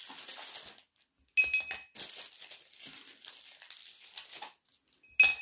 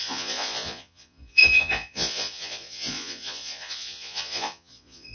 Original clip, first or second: first